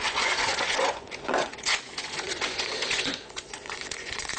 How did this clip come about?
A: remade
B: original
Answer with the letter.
A